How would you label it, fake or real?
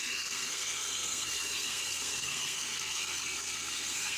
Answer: fake